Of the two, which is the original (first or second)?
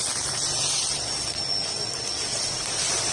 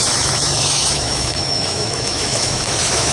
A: first